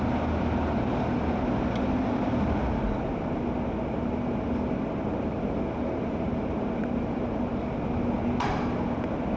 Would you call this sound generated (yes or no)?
no